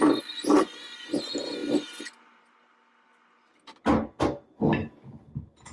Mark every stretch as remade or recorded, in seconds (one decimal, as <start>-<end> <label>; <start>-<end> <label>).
0.0-5.7 recorded